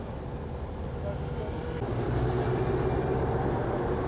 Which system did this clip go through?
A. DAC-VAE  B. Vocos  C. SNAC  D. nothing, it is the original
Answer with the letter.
D